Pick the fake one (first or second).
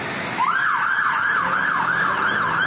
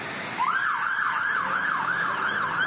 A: second